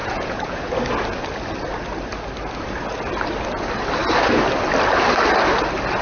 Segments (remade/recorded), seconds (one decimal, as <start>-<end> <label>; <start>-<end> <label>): 0.0-0.7 remade; 0.7-6.0 recorded